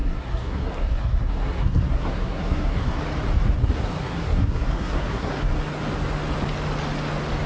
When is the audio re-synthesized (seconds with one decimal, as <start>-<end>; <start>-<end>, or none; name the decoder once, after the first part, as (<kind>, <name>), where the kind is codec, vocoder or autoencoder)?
0.0-3.0 (codec, SNAC); 3.6-5.4